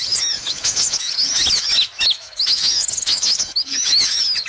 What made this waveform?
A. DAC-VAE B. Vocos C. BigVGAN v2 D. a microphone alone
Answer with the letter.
A